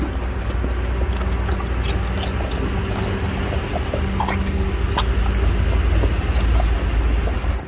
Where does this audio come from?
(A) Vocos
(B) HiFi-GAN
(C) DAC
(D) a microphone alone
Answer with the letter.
D